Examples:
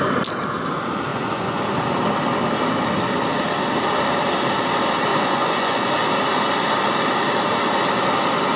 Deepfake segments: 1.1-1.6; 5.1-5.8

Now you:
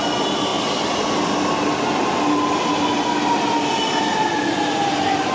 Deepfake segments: none

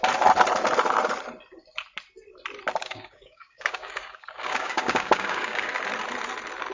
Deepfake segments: 2.8-5.7

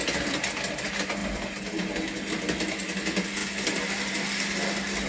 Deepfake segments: none

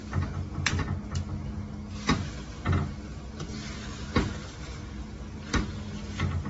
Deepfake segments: none

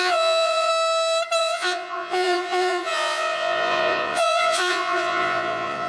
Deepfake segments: 0.0-0.7; 1.4-5.9

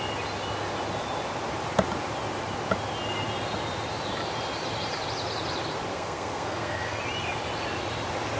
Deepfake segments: 5.9-7.0

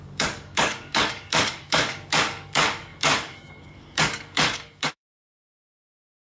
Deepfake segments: 0.0-6.2